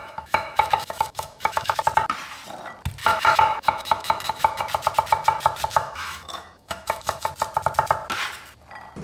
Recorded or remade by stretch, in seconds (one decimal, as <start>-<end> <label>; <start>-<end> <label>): 0.0-1.8 remade; 1.8-3.0 recorded; 3.0-4.6 remade; 4.6-5.7 recorded; 5.7-7.3 remade; 7.3-9.0 recorded